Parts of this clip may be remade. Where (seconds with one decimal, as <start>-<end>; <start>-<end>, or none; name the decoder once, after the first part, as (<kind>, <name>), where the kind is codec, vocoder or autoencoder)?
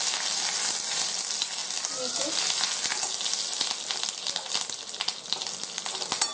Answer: none